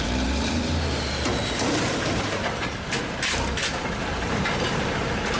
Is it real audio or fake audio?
fake